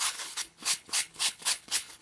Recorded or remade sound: remade